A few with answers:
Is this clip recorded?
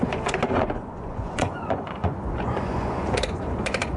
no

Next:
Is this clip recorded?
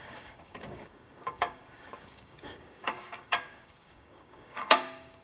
no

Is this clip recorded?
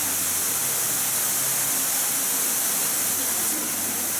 yes